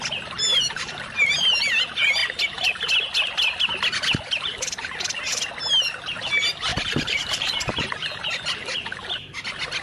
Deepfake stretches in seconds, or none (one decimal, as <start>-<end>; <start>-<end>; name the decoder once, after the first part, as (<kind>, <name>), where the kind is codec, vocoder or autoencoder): 0.5-1.6 (vocoder, BigVGAN v2); 6.7-8.2